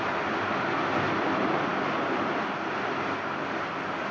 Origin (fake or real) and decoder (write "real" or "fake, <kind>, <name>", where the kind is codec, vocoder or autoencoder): real